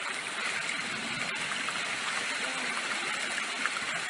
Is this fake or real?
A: real